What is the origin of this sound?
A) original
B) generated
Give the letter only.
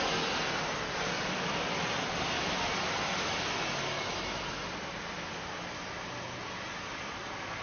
A